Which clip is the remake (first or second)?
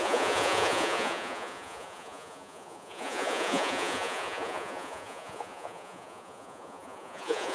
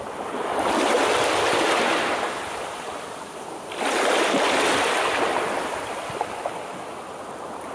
first